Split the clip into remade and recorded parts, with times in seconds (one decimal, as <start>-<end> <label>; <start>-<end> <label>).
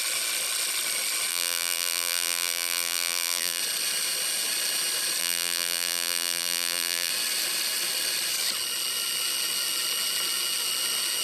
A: 0.0-1.3 recorded; 1.3-3.6 remade; 3.6-5.2 recorded; 5.2-7.1 remade; 7.1-11.2 recorded